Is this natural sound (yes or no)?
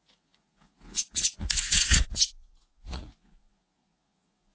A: no